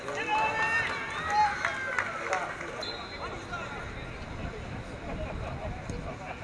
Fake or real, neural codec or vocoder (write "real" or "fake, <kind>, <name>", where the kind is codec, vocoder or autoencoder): real